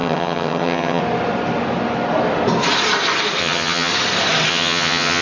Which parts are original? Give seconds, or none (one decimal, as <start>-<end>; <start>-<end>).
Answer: 1.0-3.4; 3.9-4.5